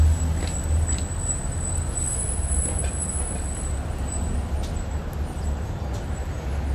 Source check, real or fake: real